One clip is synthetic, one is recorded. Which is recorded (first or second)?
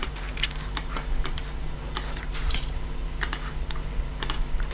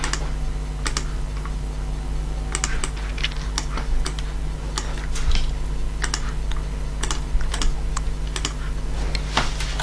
second